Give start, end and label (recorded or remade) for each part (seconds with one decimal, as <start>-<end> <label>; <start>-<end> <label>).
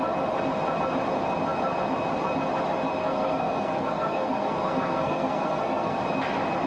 0.0-3.0 recorded; 3.0-6.0 remade; 6.0-6.7 recorded